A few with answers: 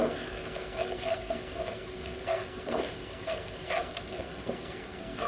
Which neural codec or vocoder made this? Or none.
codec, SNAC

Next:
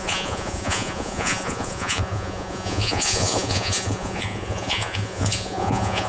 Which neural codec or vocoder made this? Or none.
vocoder, Vocos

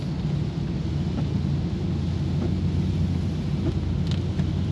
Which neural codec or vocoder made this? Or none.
none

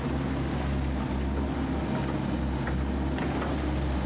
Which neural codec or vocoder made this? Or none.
none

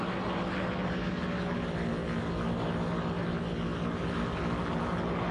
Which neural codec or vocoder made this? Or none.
none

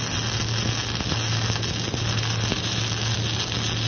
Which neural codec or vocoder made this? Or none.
none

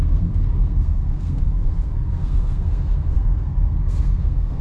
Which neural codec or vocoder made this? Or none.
codec, SNAC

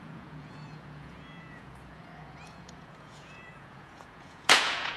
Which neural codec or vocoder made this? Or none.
vocoder, Vocos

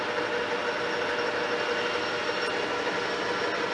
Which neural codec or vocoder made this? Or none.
none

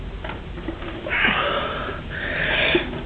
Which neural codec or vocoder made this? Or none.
vocoder, BigVGAN v2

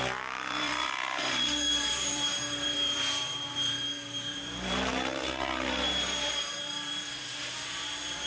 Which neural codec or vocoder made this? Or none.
vocoder, BigVGAN v2